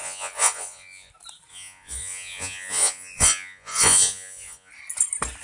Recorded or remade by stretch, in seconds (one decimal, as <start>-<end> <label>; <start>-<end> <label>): 0.0-1.1 remade; 1.1-1.5 recorded; 1.5-4.7 remade; 4.7-5.4 recorded